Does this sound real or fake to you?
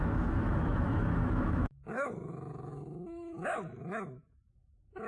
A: fake